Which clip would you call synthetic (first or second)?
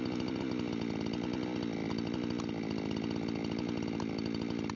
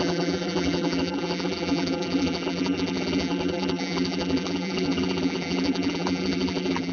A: second